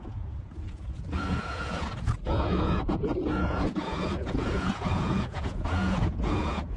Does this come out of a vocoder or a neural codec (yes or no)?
yes